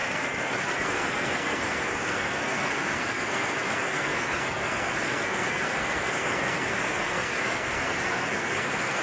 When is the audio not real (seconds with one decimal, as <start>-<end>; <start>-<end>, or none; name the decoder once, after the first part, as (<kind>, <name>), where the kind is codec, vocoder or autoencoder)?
0.0-9.0 (codec, SNAC)